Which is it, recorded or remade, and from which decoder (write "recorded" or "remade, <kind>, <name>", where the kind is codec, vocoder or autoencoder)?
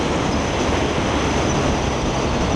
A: recorded